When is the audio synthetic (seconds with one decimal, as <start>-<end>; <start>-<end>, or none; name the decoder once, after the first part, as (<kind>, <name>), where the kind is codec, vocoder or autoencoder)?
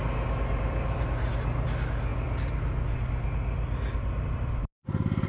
none